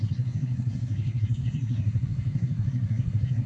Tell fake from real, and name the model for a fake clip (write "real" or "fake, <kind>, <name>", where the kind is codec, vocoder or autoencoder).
fake, codec, SNAC